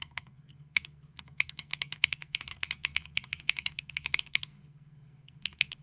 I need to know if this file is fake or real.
fake